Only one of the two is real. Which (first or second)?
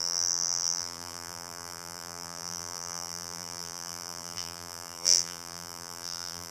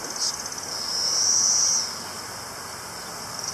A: second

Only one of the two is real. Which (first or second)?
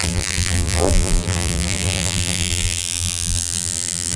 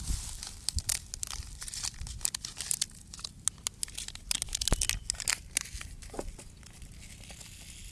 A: second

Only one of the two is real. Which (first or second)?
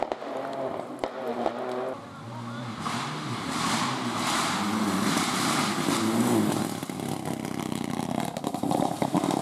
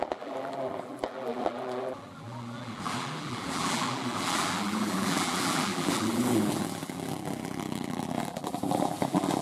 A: first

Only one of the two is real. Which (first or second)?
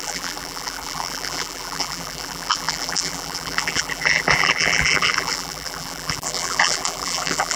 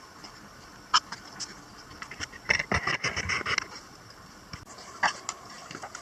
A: second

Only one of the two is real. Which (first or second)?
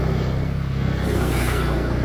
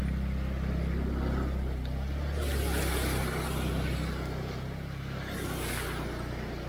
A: second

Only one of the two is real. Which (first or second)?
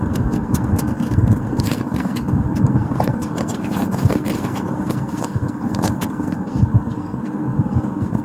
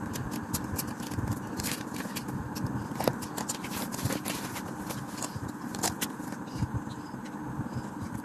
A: second